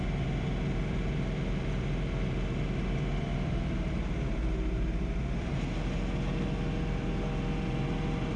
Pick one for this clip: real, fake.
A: real